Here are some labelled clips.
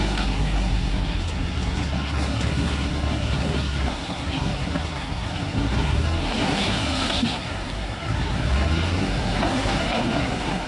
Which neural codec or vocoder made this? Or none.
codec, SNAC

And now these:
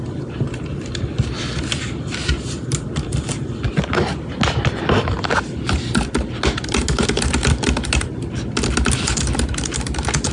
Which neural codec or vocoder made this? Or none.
none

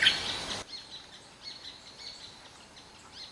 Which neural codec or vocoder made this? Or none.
none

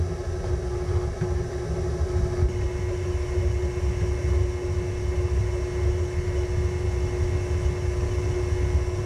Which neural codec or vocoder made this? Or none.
none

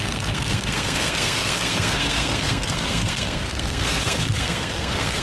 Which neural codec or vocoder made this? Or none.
codec, SNAC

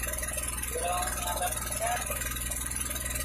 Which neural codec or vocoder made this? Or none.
none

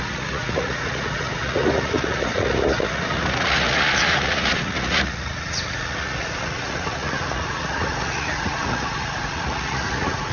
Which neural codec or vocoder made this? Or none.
vocoder, Vocos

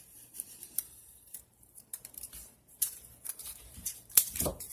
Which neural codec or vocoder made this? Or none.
vocoder, BigVGAN v2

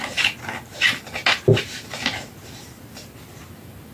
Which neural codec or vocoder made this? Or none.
none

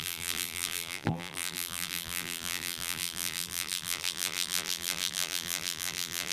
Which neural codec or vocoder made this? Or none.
vocoder, BigVGAN v2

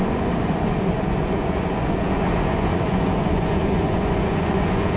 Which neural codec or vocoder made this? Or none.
vocoder, Vocos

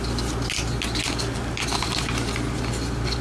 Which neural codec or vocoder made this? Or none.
none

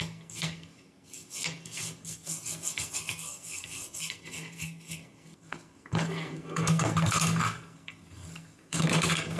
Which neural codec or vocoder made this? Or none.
codec, SNAC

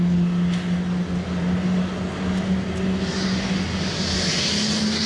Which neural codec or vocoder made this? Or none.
none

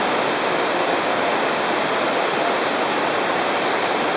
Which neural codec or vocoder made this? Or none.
none